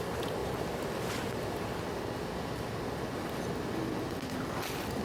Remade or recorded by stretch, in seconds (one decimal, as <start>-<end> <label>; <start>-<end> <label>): 0.0-5.0 recorded